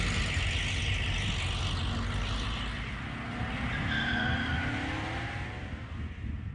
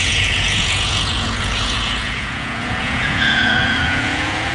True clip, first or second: first